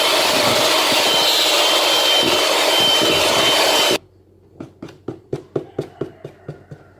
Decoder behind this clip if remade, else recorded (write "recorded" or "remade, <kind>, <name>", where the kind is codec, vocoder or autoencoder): recorded